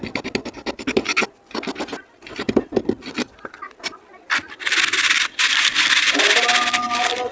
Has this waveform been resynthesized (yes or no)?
no